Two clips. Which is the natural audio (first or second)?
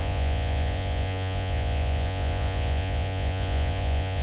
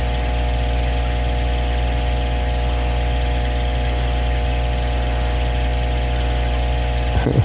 second